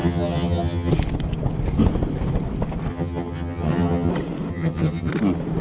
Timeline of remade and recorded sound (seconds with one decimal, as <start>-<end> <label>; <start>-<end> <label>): 0.0-0.9 remade; 0.9-2.9 recorded; 2.9-4.1 remade; 4.1-4.5 recorded; 4.5-5.1 remade; 5.1-5.6 recorded